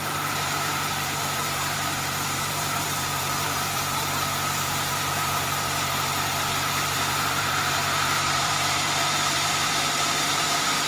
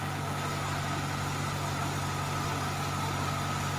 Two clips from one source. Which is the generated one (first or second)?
first